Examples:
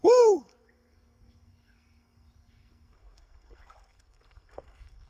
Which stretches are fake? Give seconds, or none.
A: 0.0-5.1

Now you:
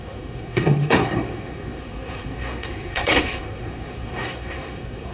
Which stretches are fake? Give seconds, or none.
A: 0.0-5.1

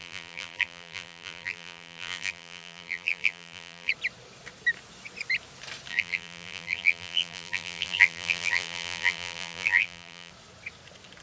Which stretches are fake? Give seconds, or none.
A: 0.0-3.9; 5.9-10.3